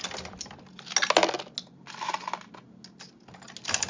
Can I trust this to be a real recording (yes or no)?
yes